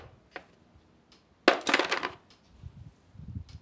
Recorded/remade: recorded